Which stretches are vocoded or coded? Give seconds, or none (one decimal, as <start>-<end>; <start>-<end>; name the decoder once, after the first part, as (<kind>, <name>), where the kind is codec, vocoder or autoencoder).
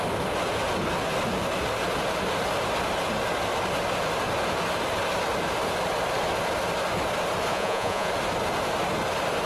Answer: 7.5-8.1 (vocoder, Vocos)